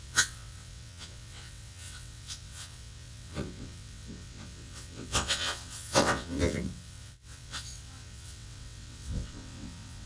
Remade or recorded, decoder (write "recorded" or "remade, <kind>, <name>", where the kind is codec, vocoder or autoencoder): remade, vocoder, WaveNeXt